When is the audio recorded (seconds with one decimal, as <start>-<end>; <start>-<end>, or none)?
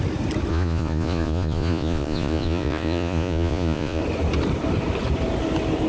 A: 0.0-0.5; 4.0-5.9